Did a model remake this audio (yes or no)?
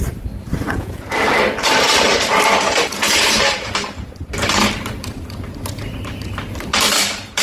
yes